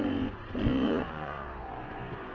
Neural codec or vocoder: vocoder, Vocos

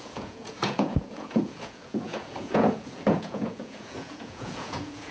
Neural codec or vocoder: vocoder, Vocos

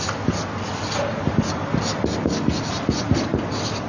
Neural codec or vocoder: none